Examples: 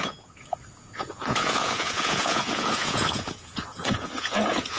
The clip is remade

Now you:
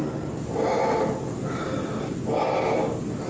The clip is recorded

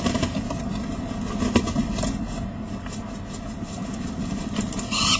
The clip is recorded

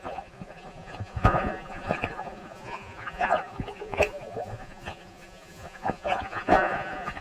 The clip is remade